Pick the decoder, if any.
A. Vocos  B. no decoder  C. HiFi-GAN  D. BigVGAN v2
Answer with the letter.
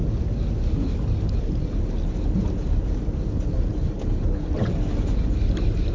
B